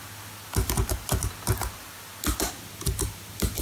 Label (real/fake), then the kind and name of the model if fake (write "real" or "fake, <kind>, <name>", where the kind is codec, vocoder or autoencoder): real